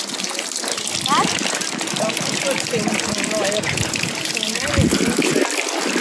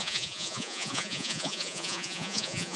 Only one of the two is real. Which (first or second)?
first